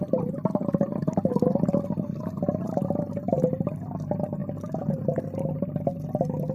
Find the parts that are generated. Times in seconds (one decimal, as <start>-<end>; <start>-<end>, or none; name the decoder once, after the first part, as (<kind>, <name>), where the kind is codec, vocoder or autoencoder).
none